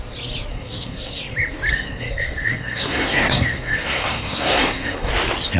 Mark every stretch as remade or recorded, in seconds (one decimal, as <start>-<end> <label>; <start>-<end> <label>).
0.0-0.5 recorded; 0.5-1.2 remade; 1.2-1.7 recorded; 1.7-5.1 remade; 5.1-5.6 recorded